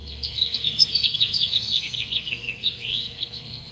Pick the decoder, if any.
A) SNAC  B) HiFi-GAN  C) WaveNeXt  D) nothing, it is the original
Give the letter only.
A